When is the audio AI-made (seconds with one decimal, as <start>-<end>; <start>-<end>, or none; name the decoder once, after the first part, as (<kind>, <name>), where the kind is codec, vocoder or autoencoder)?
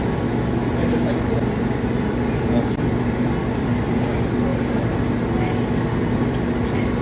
none